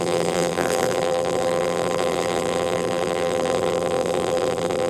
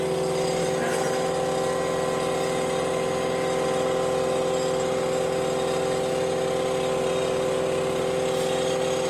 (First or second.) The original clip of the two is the second